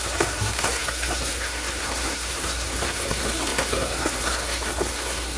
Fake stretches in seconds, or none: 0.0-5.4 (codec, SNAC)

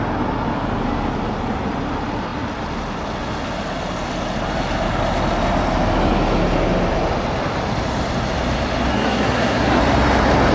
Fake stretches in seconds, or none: 8.9-9.8 (codec, SNAC)